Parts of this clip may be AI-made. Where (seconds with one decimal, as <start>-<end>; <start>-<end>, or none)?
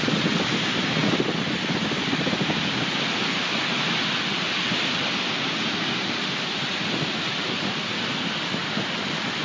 none